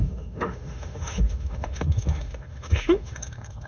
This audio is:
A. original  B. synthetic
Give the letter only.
B